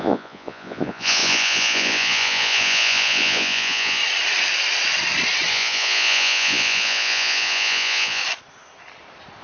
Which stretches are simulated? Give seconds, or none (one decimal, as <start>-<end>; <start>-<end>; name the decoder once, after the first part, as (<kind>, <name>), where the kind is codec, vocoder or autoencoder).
0.0-4.0 (vocoder, Vocos); 5.5-8.2